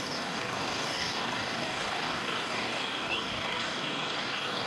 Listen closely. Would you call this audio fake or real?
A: fake